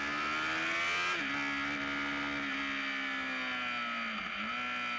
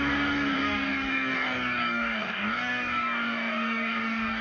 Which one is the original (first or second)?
first